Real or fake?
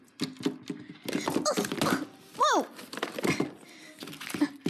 real